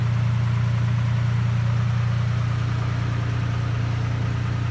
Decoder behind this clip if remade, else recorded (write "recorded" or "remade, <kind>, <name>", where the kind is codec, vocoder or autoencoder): recorded